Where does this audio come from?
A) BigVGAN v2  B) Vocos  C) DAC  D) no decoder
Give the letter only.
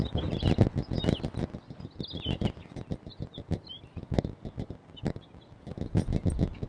D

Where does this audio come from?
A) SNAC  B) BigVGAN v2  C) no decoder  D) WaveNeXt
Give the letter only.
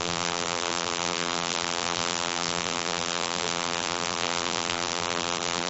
B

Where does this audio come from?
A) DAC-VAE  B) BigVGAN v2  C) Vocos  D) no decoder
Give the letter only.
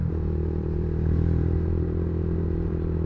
B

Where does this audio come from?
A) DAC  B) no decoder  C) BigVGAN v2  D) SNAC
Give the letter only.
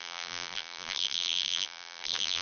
C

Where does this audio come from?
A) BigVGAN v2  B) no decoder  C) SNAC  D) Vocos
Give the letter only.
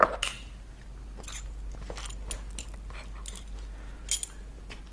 B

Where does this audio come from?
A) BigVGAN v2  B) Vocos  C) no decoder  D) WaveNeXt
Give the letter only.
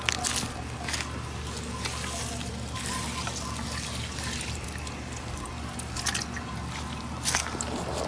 C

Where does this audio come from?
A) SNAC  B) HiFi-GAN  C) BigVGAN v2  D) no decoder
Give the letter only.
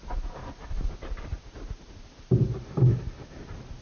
C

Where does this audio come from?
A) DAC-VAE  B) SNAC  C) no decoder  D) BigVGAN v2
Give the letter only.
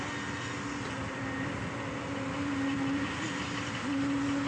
C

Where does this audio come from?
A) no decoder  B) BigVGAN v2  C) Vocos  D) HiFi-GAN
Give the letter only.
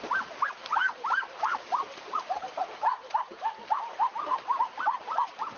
B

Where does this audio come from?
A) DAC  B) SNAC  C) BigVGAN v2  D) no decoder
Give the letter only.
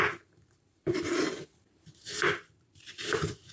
C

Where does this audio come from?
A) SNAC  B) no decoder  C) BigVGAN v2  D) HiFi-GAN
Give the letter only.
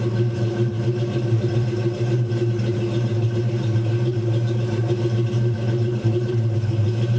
C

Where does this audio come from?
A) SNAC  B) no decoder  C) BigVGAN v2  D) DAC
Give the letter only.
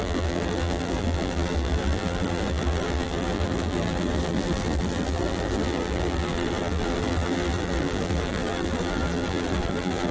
C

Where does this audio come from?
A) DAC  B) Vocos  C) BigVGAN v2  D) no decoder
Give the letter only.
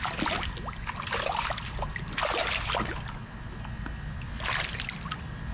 D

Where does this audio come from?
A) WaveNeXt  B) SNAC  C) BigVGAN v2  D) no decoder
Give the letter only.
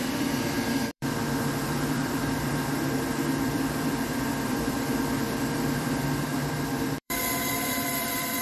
C